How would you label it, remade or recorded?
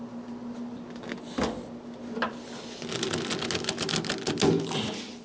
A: recorded